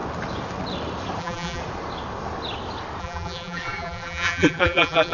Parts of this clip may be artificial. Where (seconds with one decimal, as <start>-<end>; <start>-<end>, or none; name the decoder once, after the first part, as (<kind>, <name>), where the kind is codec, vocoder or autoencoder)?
1.2-1.6 (vocoder, BigVGAN v2); 3.0-5.1